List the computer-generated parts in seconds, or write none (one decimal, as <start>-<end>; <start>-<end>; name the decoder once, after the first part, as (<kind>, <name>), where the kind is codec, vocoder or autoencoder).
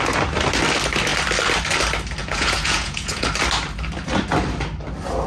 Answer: 2.2-3.3 (vocoder, Vocos)